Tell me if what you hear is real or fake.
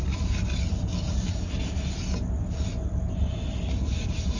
real